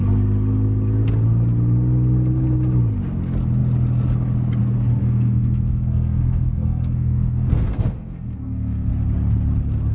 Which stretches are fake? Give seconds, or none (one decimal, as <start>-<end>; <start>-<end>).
5.0-8.9